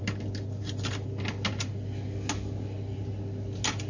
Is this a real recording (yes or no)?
yes